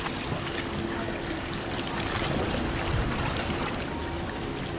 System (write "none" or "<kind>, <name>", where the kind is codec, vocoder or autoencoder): none